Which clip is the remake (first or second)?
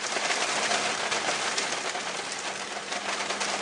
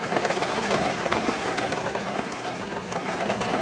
second